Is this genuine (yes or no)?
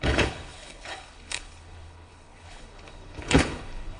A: no